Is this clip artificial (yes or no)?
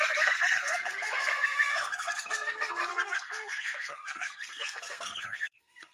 yes